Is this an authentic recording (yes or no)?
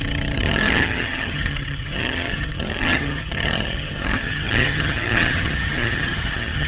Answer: no